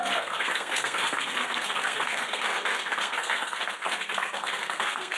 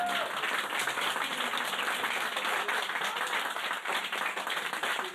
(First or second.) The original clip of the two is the second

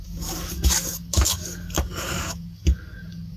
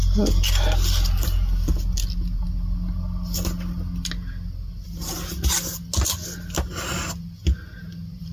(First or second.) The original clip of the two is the second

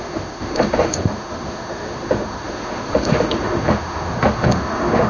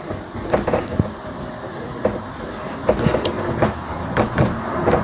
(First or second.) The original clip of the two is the second